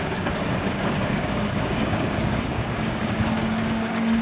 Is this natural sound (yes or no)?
no